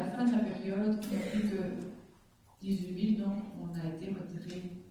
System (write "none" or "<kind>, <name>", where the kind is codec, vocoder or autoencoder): none